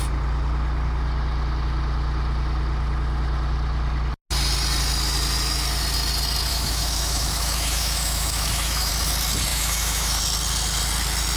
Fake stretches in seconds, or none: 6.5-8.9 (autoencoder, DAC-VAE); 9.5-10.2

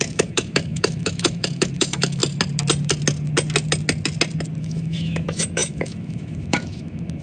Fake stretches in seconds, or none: 0.0-2.2 (autoencoder, DAC-VAE); 4.6-7.2

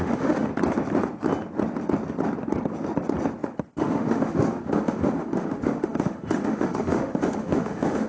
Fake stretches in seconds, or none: 0.0-0.5 (autoencoder, DAC-VAE); 3.8-8.1

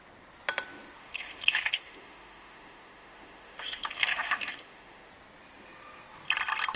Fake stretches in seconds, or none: 1.0-5.1 (autoencoder, DAC-VAE)